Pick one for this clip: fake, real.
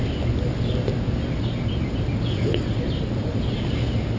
real